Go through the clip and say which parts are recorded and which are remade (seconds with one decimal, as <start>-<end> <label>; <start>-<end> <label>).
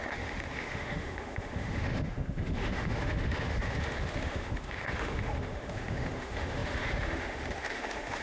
0.0-8.2 remade